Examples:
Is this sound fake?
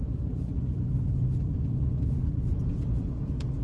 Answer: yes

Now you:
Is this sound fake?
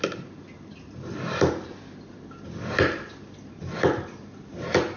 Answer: no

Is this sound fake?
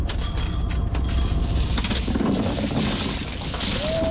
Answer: no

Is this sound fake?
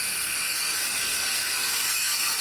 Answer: yes